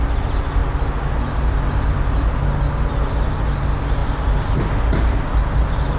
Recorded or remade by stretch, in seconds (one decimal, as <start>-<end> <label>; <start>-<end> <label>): 0.0-6.0 recorded